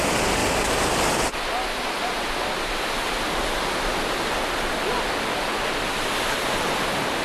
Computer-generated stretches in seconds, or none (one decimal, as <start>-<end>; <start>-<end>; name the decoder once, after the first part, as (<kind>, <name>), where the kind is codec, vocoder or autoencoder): none